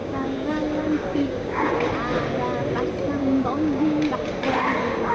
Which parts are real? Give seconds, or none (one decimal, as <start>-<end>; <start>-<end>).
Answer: 0.6-1.1; 1.7-3.2; 4.1-5.1